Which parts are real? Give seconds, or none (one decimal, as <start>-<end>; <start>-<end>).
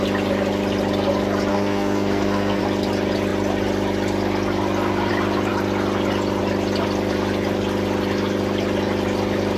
0.0-1.5; 2.6-9.6